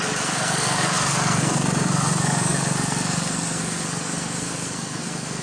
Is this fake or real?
fake